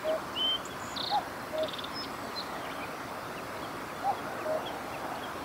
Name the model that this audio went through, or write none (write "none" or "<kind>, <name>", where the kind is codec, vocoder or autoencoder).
none